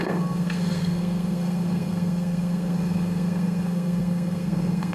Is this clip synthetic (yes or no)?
yes